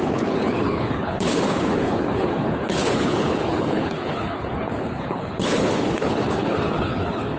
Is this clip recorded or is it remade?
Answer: remade